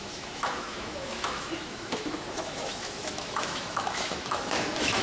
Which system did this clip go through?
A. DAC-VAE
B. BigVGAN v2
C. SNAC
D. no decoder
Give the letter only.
A